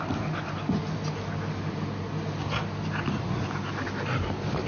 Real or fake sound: real